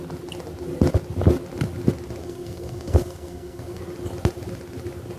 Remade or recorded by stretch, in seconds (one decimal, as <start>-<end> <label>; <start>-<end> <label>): 0.0-2.2 recorded; 2.2-3.8 remade; 3.8-5.2 recorded